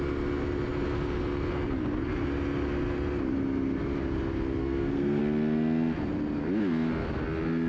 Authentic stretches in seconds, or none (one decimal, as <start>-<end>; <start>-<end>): 0.0-4.6; 5.2-7.7

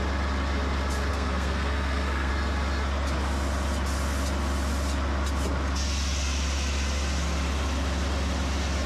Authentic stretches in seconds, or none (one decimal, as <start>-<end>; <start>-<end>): 0.0-1.1; 2.3-8.9

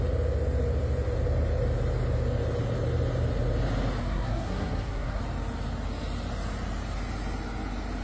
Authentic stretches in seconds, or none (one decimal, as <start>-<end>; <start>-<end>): 0.0-4.0; 5.2-8.0

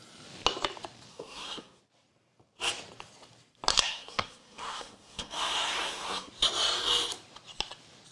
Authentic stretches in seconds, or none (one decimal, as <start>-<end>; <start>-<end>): 0.0-1.1; 1.8-3.7; 6.3-8.1

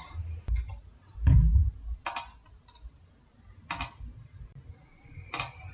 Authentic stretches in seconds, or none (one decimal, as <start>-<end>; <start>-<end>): 0.0-5.7

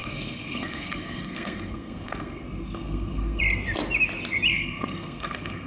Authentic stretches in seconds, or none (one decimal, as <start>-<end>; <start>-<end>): 3.4-4.5